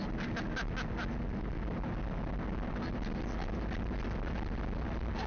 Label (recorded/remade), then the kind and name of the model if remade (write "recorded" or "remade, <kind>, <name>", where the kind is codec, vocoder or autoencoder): recorded